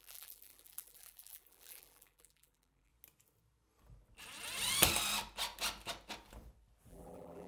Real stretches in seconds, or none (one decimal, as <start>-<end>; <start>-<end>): 2.9-6.9